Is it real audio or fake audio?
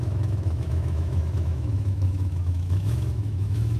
fake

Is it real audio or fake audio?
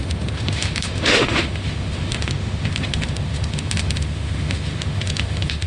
fake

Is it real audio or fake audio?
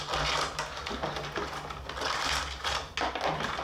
real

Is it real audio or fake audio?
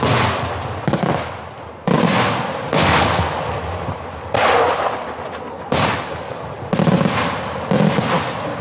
real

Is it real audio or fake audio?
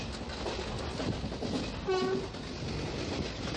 real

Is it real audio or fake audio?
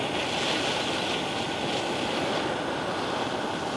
real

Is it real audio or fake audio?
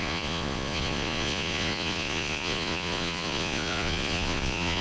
fake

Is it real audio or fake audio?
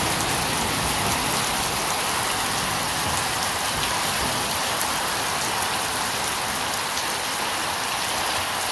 real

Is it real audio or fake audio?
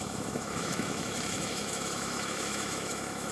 fake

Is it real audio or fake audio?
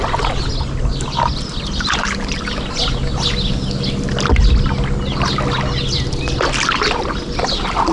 real